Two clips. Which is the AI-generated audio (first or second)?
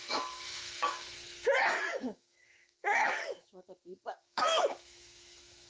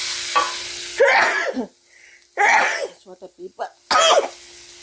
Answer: first